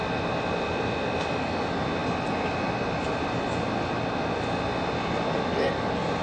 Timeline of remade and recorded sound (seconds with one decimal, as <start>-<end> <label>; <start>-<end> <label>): 0.0-6.2 recorded